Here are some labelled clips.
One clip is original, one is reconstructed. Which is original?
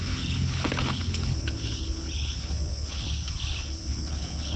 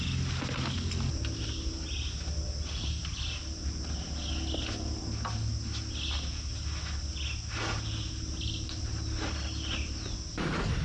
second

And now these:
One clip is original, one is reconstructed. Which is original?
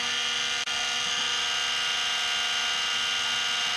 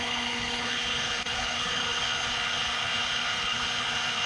first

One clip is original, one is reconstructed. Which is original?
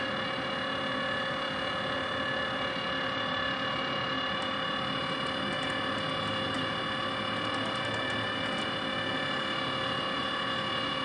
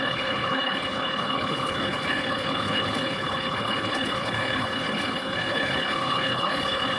first